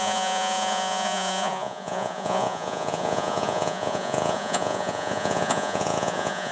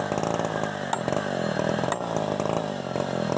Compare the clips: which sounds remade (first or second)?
first